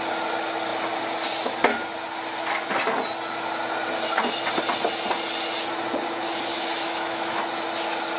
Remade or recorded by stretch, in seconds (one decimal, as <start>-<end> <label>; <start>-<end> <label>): 0.0-6.5 recorded; 6.5-7.4 remade; 7.4-8.2 recorded